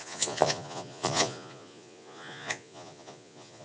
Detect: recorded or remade remade